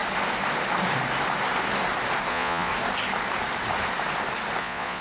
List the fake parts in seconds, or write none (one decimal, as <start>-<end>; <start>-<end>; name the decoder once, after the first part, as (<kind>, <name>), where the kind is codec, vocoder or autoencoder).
2.3-2.7 (vocoder, Vocos); 4.6-5.0